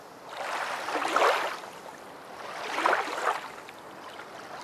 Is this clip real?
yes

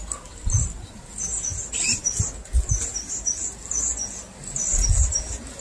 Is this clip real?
yes